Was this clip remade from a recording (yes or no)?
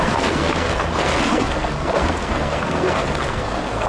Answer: yes